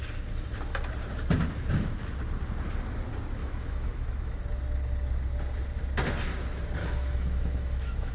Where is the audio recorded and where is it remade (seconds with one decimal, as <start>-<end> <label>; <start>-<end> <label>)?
0.0-3.4 recorded; 3.4-4.4 remade; 4.4-6.8 recorded; 6.8-8.1 remade